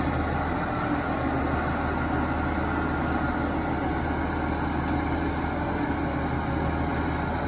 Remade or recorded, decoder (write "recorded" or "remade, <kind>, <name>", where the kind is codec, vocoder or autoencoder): recorded